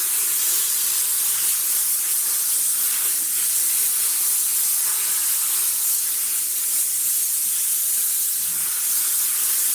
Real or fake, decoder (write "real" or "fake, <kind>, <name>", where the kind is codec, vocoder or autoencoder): real